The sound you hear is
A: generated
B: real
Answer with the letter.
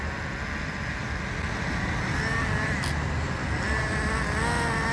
B